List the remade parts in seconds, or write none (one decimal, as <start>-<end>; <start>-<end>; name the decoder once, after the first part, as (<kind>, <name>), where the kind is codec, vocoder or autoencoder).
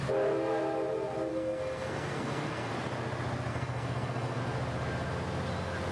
1.3-2.7 (codec, SNAC); 3.5-4.4